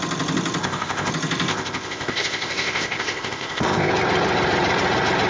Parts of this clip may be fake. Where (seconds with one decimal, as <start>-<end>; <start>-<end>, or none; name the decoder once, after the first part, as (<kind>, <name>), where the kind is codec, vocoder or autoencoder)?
0.6-1.1 (codec, ZipCodec); 1.5-3.9